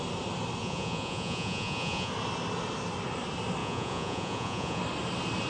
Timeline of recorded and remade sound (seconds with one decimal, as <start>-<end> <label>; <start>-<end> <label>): 0.0-0.6 recorded; 0.6-2.1 remade; 2.1-3.6 recorded; 3.6-4.8 remade; 4.8-5.5 recorded